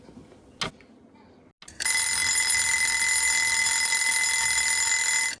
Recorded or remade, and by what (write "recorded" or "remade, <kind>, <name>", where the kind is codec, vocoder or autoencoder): recorded